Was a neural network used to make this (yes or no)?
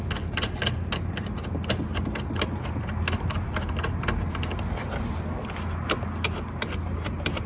no